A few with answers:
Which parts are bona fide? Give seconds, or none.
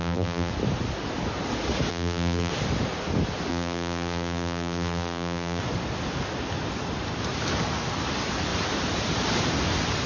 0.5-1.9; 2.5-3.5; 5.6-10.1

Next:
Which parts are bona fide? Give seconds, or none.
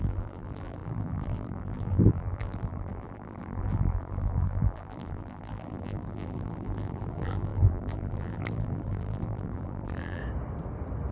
10.2-11.1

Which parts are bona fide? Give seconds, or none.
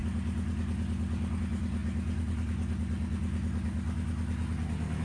0.0-1.4; 1.8-5.0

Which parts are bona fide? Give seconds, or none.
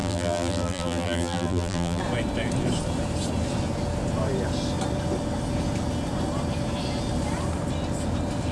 2.0-8.5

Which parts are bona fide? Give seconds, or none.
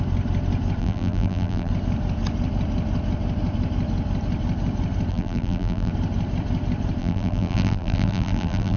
0.0-0.8; 1.7-5.1; 5.9-7.0